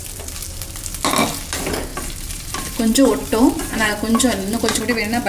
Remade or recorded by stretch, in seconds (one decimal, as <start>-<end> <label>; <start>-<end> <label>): 0.0-1.9 recorded; 1.9-4.8 remade; 4.8-5.3 recorded